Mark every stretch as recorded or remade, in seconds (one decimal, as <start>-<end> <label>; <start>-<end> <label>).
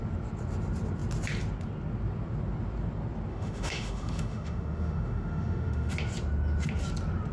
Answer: 0.0-3.3 recorded; 3.3-5.9 remade; 5.9-7.3 recorded